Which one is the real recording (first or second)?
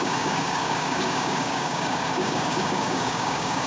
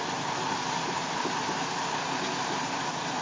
second